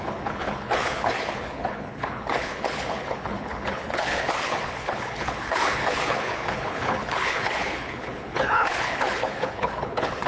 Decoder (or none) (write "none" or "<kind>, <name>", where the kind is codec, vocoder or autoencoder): codec, HILCodec